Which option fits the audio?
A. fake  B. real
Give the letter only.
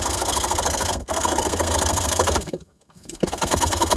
A